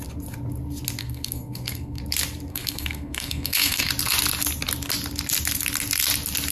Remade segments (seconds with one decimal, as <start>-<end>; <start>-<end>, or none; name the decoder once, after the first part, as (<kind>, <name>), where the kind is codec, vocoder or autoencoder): 1.0-2.0 (codec, SNAC); 2.5-3.9